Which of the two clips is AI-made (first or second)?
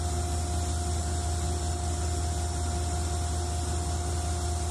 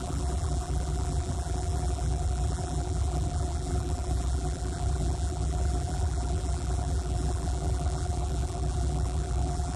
second